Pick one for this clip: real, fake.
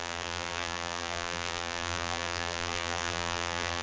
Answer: fake